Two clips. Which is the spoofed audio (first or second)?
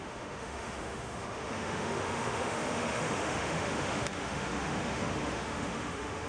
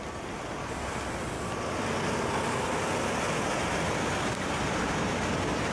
first